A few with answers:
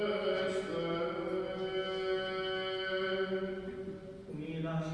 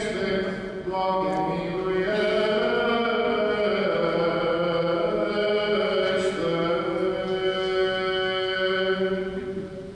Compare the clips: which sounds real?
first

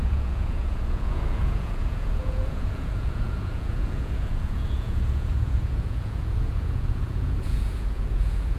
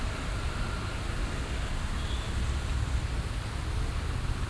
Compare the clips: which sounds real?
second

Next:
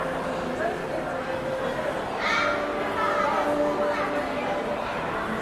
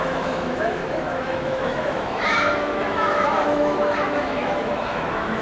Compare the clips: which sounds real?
first